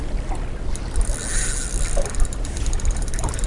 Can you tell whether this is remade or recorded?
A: recorded